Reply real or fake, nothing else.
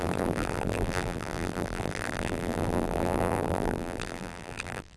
fake